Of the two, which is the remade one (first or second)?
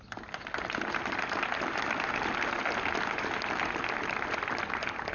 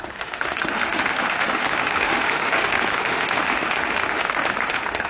second